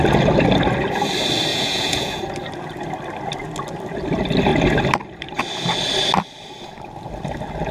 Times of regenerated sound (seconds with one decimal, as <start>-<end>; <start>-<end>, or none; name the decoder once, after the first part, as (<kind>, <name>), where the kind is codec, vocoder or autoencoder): 1.5-2.2 (vocoder, Vocos)